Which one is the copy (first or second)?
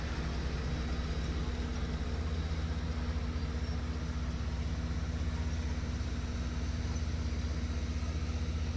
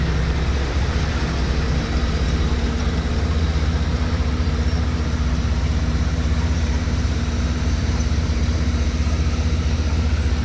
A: second